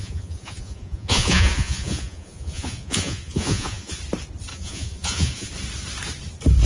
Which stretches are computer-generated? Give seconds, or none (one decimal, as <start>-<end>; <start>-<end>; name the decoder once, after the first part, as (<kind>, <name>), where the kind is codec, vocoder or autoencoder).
0.0-4.0 (vocoder, Vocos); 4.5-5.5